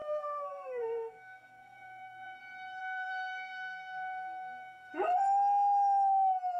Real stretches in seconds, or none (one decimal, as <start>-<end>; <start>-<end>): 2.4-2.8; 4.9-6.6